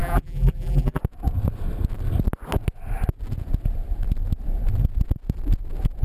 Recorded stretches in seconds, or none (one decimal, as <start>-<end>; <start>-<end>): 1.0-6.0